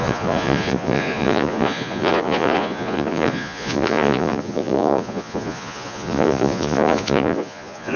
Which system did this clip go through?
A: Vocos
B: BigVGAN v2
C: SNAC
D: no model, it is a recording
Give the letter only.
A